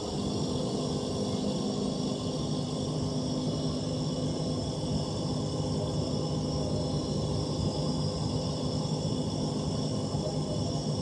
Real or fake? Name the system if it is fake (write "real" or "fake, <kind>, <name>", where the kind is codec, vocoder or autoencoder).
real